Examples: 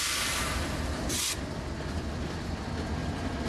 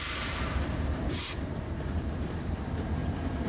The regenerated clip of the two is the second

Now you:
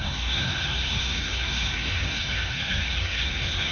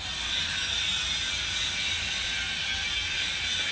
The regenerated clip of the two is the first